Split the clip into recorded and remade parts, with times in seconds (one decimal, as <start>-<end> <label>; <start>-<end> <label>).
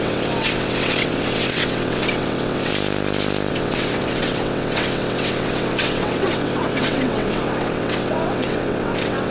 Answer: 0.0-2.7 remade; 2.7-3.5 recorded; 3.5-9.3 remade